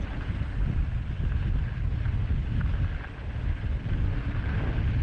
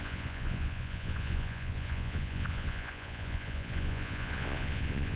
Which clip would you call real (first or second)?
first